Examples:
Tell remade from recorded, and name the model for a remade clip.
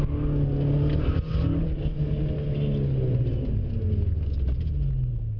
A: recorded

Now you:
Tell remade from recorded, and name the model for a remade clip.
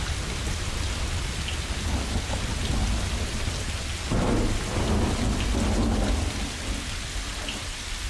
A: recorded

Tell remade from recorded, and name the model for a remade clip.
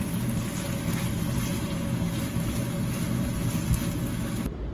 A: recorded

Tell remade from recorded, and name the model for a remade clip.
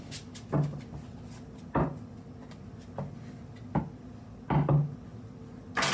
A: recorded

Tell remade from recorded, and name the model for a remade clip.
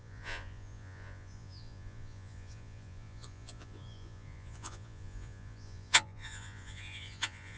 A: remade, vocoder, Vocos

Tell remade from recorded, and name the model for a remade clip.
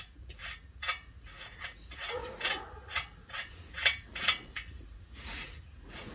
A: remade, vocoder, Vocos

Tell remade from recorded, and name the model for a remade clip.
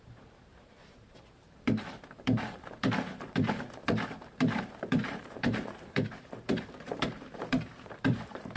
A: remade, vocoder, BigVGAN v2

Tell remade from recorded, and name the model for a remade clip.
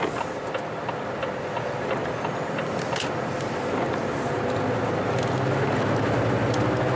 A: recorded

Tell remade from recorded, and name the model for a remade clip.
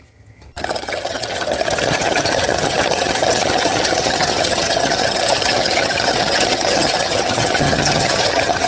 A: remade, vocoder, HiFi-GAN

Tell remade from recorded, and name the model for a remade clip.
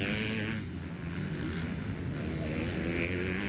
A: recorded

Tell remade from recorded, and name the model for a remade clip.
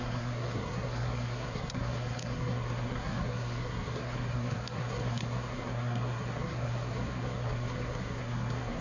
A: remade, codec, SNAC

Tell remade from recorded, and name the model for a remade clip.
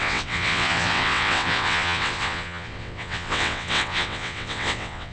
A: remade, vocoder, WaveNeXt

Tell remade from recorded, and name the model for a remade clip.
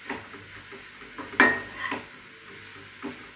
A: recorded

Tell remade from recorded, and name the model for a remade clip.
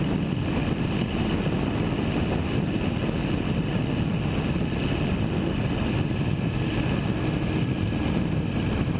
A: recorded